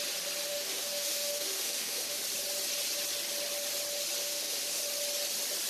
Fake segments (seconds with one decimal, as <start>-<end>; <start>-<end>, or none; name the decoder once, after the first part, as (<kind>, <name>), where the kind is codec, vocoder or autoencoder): 0.5-2.2 (autoencoder, DAC-VAE); 4.2-4.8